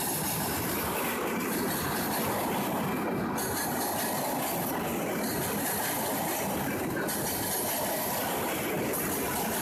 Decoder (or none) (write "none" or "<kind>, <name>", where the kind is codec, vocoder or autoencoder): none